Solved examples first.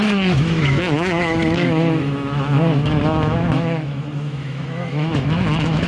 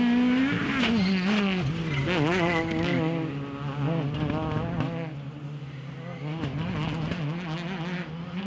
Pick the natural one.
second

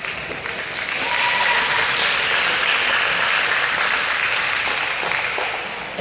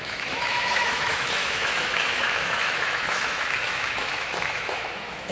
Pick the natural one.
first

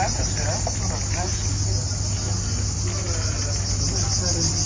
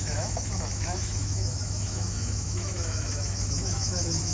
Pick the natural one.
first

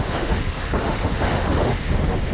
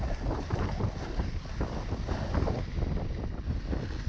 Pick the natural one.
second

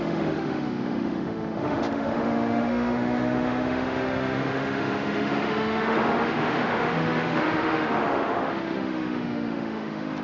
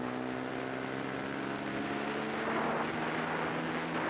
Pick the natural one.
second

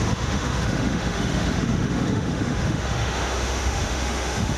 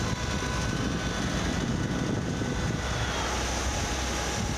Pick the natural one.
second